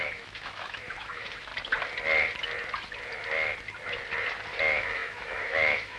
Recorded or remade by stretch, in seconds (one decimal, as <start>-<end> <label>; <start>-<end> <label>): 0.0-1.5 remade; 1.5-4.6 recorded; 4.6-6.0 remade